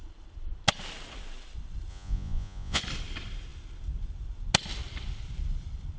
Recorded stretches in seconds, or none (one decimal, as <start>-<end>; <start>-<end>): 0.0-1.9; 2.8-6.0